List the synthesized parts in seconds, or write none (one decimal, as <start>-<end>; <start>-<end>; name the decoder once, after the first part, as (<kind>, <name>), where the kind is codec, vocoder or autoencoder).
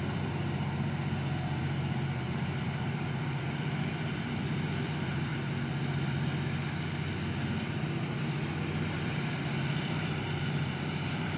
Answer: 0.0-5.3 (vocoder, BigVGAN v2); 8.9-11.4